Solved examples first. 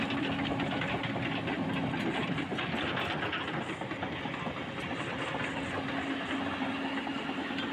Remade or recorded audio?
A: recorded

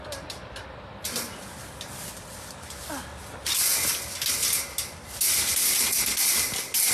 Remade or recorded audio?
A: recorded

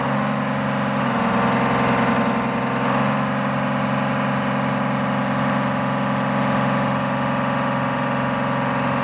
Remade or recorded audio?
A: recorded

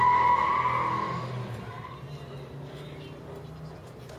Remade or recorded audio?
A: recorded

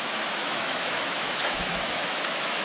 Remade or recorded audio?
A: remade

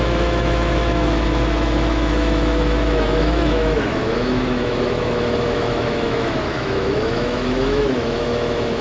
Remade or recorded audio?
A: remade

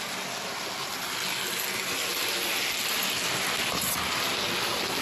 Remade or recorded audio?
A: recorded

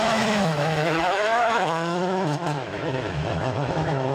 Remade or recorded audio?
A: remade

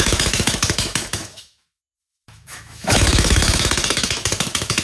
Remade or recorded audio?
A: remade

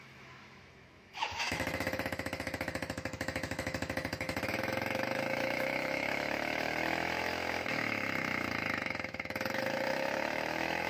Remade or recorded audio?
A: remade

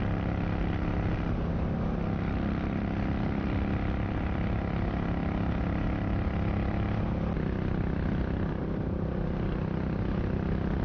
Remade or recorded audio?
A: recorded